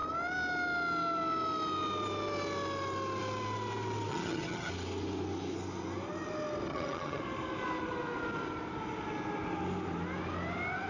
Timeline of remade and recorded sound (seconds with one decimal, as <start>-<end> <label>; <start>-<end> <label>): 0.0-4.1 recorded; 4.1-4.7 remade; 4.7-6.7 recorded; 6.7-7.2 remade; 7.2-10.9 recorded

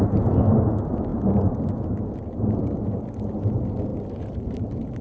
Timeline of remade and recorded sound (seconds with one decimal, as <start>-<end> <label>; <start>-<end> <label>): 0.0-5.0 recorded

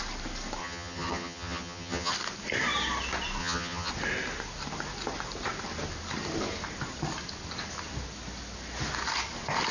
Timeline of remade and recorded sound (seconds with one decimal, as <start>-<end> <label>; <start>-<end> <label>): 0.0-0.6 recorded; 0.6-2.1 remade; 2.1-3.4 recorded; 3.4-3.9 remade; 3.9-9.7 recorded

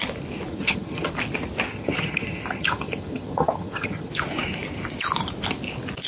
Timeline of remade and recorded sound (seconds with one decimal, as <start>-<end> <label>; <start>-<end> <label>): 0.0-0.5 recorded; 0.5-1.1 remade; 1.1-1.7 recorded; 1.7-4.1 remade; 4.1-6.1 recorded